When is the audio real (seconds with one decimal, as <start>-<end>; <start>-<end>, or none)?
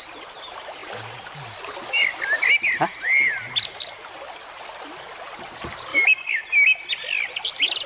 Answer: 0.0-5.9; 6.4-7.9